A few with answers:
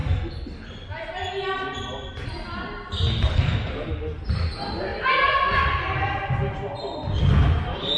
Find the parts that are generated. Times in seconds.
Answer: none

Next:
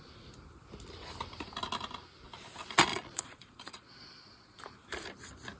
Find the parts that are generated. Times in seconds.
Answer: 2.9-4.6 (vocoder, Vocos)

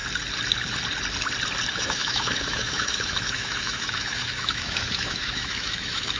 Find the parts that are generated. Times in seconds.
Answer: 1.7-6.2 (autoencoder, DAC-VAE)

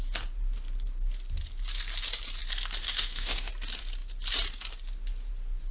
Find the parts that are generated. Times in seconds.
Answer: 2.8-3.5 (autoencoder, DAC-VAE)